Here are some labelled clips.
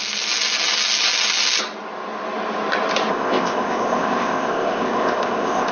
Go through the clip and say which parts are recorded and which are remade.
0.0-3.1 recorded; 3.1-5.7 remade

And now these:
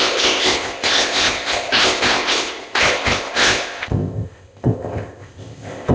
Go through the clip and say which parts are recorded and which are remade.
0.0-5.9 remade

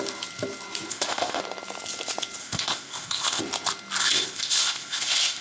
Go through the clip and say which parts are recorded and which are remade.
0.0-0.9 recorded; 0.9-1.4 remade; 1.4-2.4 recorded; 2.4-3.4 remade; 3.4-4.0 recorded; 4.0-5.4 remade

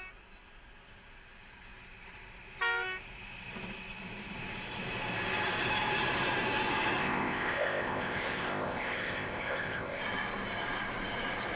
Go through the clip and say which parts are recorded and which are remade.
0.0-7.0 recorded; 7.0-10.0 remade; 10.0-11.6 recorded

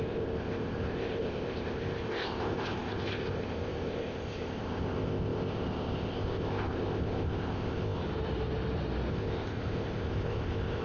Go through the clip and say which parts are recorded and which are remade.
0.0-8.0 remade; 8.0-9.1 recorded; 9.1-10.8 remade